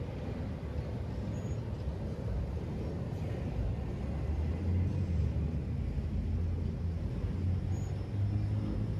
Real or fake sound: real